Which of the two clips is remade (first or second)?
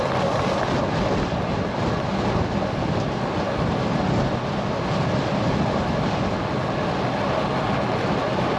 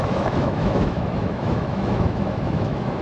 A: second